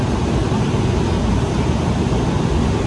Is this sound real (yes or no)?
yes